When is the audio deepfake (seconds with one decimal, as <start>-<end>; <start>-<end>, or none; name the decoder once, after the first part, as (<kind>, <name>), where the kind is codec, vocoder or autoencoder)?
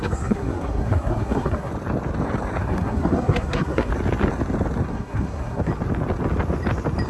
0.0-1.7 (codec, SNAC); 2.6-3.9; 4.9-5.7